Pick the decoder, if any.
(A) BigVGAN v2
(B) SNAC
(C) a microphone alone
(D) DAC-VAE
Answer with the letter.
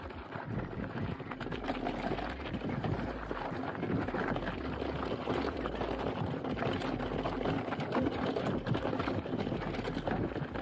C